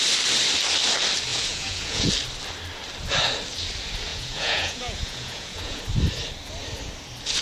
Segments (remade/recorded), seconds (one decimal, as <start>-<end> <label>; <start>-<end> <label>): 0.0-1.3 recorded; 1.3-2.1 remade; 2.1-4.1 recorded; 4.1-5.8 remade; 5.8-7.4 recorded